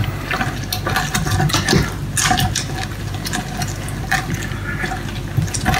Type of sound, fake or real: real